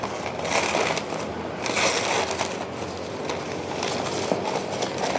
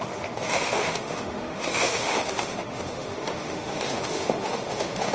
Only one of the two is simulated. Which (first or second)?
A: second